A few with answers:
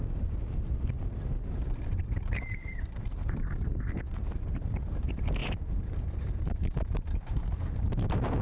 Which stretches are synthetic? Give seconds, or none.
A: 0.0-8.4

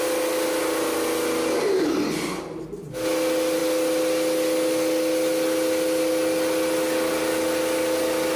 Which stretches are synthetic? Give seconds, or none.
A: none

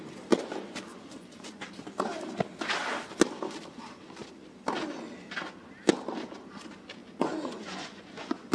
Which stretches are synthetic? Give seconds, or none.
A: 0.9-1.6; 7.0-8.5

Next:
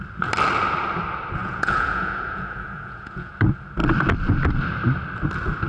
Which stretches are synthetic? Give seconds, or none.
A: 1.4-3.3

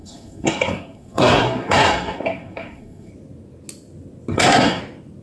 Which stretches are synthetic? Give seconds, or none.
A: 0.0-3.1; 4.3-4.8

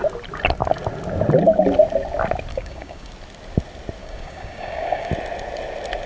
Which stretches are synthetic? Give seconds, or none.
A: 2.5-3.1; 4.0-5.1

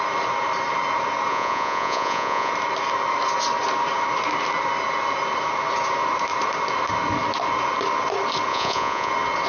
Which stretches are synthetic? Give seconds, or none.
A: 1.3-2.5; 8.5-9.1

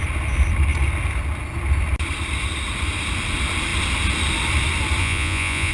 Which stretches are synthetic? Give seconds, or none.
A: 5.0-5.7